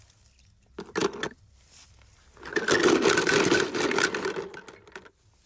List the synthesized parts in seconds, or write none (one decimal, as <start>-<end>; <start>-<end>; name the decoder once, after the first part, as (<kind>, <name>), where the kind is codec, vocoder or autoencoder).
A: none